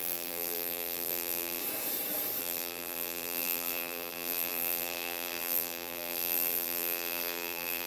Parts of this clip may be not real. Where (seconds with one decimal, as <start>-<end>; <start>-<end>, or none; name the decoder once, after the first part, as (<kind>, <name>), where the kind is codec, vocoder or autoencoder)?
0.0-1.6 (vocoder, BigVGAN v2); 2.4-7.9